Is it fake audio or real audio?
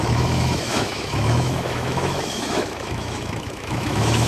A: fake